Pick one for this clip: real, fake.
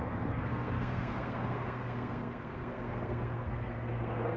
fake